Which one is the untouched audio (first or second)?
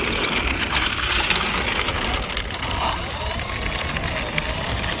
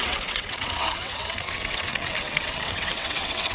first